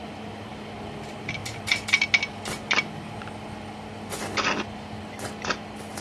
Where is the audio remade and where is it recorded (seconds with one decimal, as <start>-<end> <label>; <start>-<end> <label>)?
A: 0.0-1.4 remade; 1.4-4.7 recorded; 4.7-6.0 remade